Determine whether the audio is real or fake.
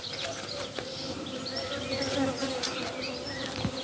real